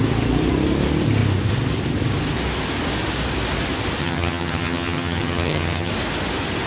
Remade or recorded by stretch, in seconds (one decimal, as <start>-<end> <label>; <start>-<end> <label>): 0.0-4.0 recorded; 4.0-5.9 remade; 5.9-6.7 recorded

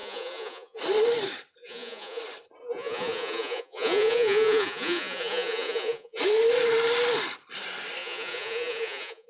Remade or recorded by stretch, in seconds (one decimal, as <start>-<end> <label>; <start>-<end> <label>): 0.0-0.8 remade; 0.8-1.6 recorded; 1.6-2.2 remade; 2.2-2.6 recorded; 2.6-6.2 remade; 6.2-8.0 recorded; 8.0-9.3 remade

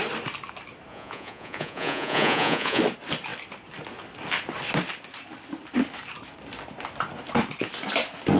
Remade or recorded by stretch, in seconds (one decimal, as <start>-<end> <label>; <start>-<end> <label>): 0.0-0.9 recorded; 0.9-2.8 remade; 2.8-8.4 recorded

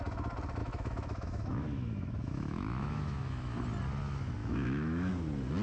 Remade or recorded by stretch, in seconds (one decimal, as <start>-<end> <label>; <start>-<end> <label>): 0.0-0.6 recorded; 0.6-3.6 remade; 3.6-4.4 recorded; 4.4-5.1 remade; 5.1-5.6 recorded

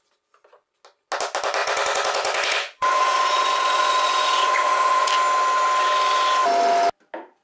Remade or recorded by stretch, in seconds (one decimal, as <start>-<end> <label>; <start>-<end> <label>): 0.0-1.6 recorded; 1.6-5.1 remade; 5.1-7.4 recorded